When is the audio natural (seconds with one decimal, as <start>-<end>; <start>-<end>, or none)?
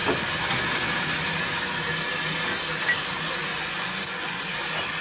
0.0-3.5; 4.4-5.0